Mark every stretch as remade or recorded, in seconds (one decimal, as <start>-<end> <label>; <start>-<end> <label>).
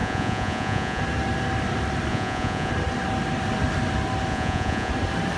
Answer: 0.0-1.0 remade; 1.0-2.1 recorded; 2.1-2.7 remade; 2.7-4.3 recorded; 4.3-4.9 remade; 4.9-5.4 recorded